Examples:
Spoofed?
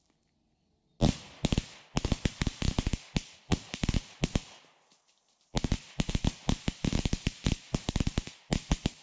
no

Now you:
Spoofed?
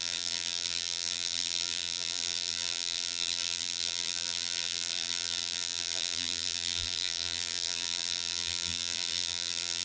yes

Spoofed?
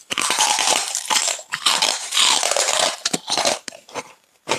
yes